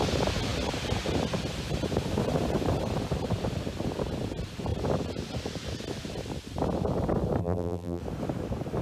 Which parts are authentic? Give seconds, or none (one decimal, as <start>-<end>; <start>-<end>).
0.0-7.4; 8.0-8.8